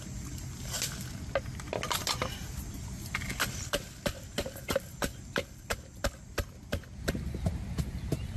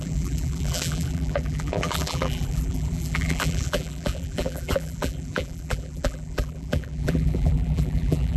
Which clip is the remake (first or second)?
second